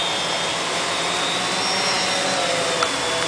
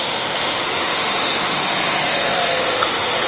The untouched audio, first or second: first